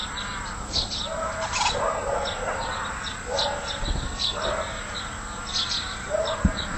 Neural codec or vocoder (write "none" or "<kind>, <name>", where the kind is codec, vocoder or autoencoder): none